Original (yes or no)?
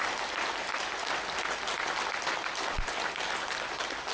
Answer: yes